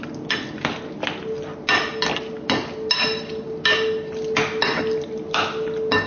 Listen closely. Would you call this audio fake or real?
real